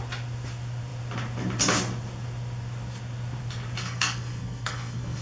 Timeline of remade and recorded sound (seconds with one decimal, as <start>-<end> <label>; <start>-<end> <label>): 0.0-3.8 recorded; 3.8-5.2 remade